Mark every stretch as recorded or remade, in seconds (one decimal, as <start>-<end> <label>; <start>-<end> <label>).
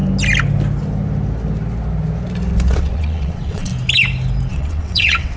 0.0-2.8 recorded; 2.8-3.7 remade; 3.7-4.5 recorded; 4.5-5.4 remade